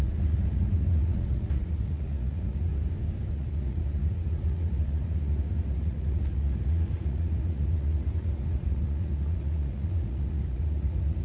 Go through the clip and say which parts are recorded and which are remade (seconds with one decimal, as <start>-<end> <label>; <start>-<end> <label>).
0.0-2.7 remade; 2.7-3.3 recorded; 3.3-11.2 remade